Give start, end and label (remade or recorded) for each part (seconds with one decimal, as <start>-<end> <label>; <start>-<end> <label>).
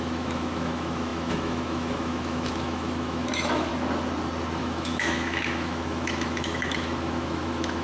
0.0-3.7 remade; 3.7-4.6 recorded; 4.6-7.8 remade